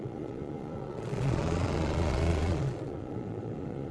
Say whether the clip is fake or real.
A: fake